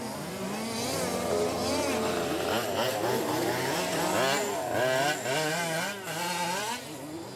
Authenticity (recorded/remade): recorded